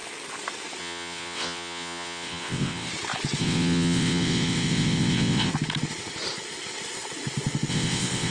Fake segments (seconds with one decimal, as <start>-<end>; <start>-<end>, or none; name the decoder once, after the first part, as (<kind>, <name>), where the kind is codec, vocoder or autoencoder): 0.8-2.9 (vocoder, WaveNeXt); 3.4-5.5; 7.7-8.3